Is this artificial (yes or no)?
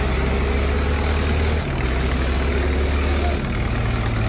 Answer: no